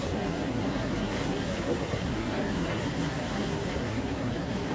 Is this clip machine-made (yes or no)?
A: yes